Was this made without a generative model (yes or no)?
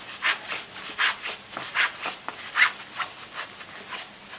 yes